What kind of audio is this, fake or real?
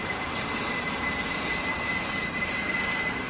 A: fake